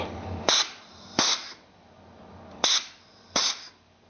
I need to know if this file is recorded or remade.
remade